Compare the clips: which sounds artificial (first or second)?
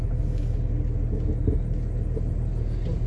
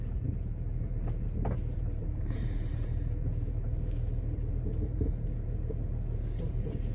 second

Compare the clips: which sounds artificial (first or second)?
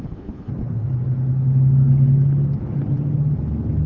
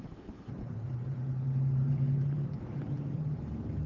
second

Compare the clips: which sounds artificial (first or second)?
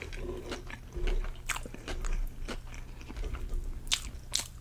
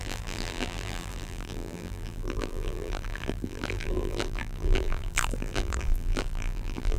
second